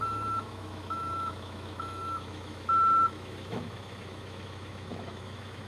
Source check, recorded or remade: remade